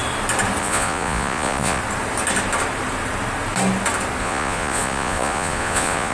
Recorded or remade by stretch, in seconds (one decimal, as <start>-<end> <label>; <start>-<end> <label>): 0.0-0.6 recorded; 0.6-1.8 remade; 1.8-4.2 recorded; 4.2-6.1 remade

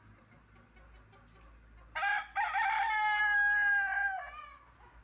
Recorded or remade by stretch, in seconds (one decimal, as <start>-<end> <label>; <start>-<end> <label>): 0.0-5.0 recorded

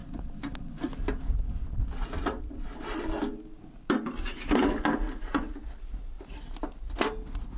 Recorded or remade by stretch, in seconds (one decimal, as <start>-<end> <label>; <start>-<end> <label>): 0.0-7.6 recorded

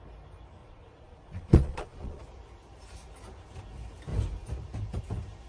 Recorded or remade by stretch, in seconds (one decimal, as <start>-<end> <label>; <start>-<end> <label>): 0.0-0.6 recorded; 0.6-2.2 remade; 2.2-5.5 recorded

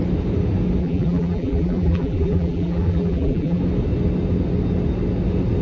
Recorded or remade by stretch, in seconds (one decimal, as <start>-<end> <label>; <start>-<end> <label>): 0.0-0.8 recorded; 0.8-3.6 remade; 3.6-5.6 recorded